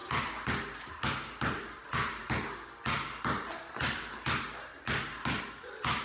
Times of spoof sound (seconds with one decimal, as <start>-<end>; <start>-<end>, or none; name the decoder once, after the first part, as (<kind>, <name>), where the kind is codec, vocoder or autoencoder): none